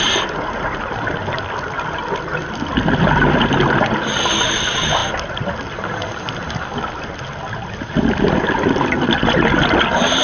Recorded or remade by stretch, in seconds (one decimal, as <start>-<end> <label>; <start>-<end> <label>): 0.0-10.2 recorded